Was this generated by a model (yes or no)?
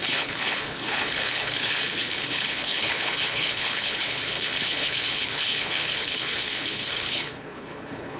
yes